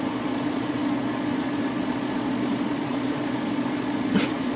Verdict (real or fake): fake